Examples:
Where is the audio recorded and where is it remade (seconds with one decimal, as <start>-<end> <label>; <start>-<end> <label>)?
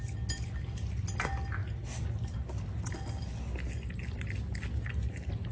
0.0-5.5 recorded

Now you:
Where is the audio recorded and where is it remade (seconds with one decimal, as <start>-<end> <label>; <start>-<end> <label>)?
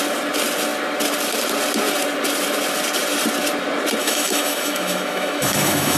0.0-4.0 recorded; 4.0-6.0 remade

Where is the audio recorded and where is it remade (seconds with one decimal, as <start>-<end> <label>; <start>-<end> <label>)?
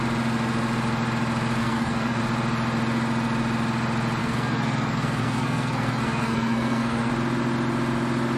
0.0-1.6 recorded; 1.6-2.2 remade; 2.2-4.2 recorded; 4.2-7.1 remade; 7.1-8.4 recorded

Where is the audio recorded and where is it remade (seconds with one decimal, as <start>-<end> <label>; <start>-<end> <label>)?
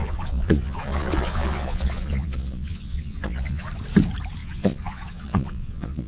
0.0-3.7 remade; 3.7-4.4 recorded; 4.4-6.1 remade